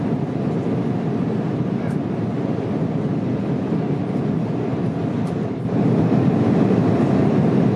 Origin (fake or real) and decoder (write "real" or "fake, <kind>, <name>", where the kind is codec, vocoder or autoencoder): real